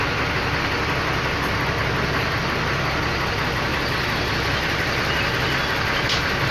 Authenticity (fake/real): real